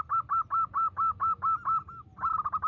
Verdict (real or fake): real